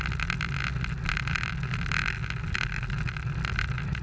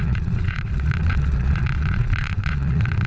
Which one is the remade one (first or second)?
second